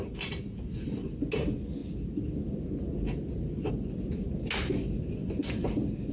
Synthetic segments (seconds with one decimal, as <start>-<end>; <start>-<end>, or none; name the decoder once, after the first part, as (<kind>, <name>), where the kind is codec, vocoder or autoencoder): none